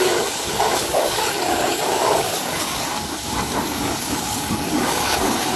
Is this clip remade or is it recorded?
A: remade